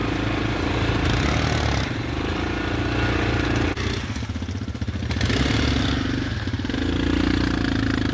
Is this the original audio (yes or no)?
yes